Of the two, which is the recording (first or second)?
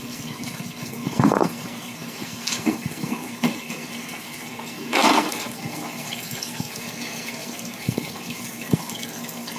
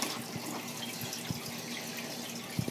second